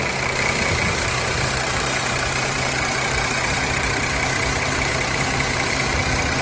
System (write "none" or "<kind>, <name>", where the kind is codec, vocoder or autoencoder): vocoder, BigVGAN v2